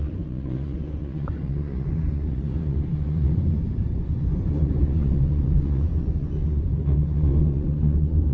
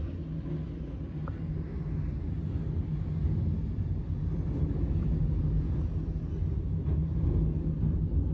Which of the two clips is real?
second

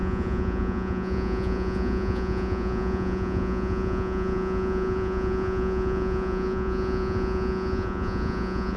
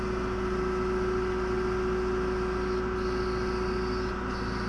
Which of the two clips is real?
second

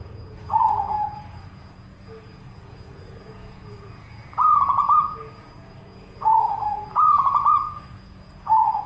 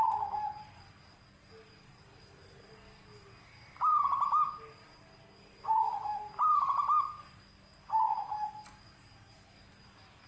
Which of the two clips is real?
second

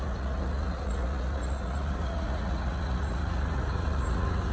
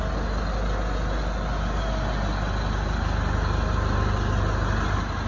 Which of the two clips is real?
second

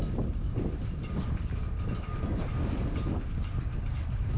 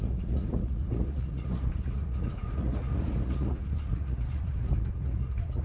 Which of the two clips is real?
first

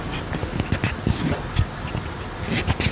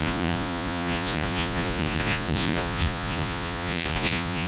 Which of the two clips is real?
first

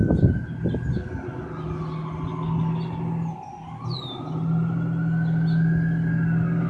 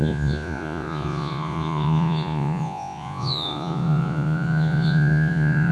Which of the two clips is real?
first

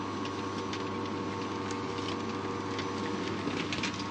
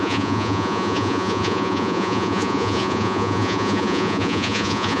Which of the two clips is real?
first